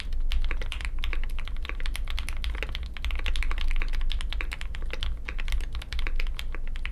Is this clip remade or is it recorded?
recorded